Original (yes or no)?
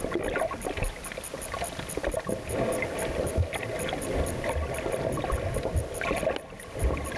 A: yes